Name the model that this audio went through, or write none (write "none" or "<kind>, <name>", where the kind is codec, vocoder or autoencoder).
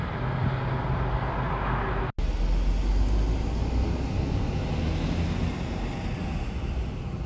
none